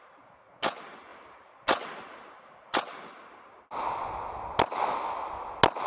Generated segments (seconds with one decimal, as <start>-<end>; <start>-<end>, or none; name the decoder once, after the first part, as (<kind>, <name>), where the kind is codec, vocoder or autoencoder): none